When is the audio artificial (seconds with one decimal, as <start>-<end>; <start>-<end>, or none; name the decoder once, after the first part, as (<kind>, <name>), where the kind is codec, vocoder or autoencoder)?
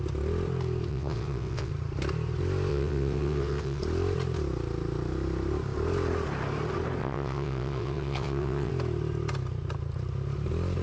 0.9-1.7 (vocoder, WaveNeXt); 2.7-3.8; 7.0-8.7